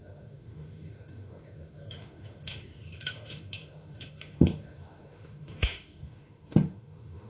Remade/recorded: remade